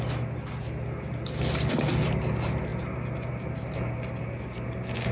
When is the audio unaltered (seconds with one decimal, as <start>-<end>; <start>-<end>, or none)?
0.0-5.1